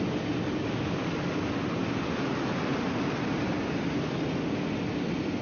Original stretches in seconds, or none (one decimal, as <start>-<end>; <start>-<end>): 0.0-5.4